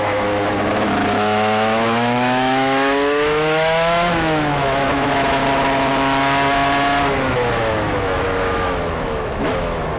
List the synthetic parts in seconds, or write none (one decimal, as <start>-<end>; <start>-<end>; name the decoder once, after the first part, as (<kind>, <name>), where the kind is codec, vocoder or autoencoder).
0.0-5.4 (autoencoder, DAC-VAE); 7.3-10.0